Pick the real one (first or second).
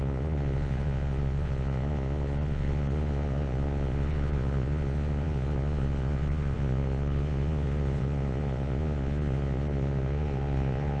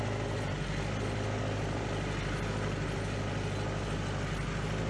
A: second